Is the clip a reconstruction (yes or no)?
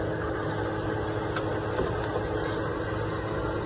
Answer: no